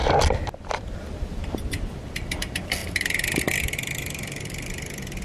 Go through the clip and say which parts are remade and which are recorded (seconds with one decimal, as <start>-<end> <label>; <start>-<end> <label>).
0.0-1.5 recorded; 1.5-2.8 remade; 2.8-3.4 recorded; 3.4-5.2 remade